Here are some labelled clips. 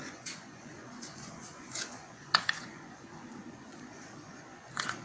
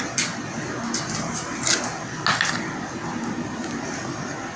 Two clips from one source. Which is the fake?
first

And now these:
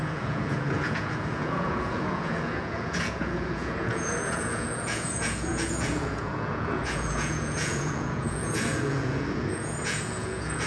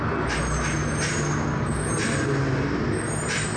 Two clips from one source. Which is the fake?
first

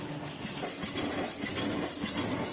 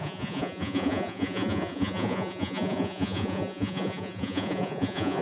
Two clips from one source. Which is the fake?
second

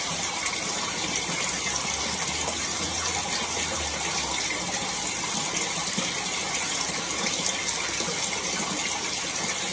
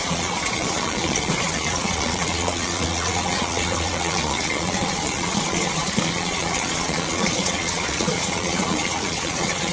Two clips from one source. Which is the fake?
second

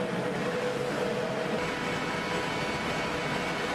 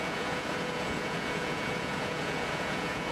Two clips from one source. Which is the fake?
second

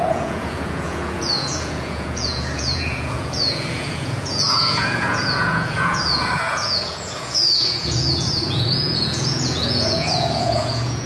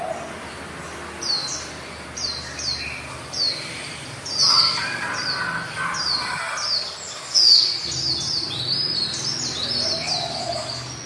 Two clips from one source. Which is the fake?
first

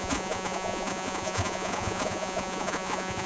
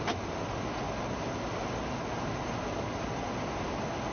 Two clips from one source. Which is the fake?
first